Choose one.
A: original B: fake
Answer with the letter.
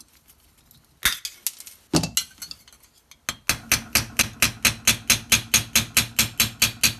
A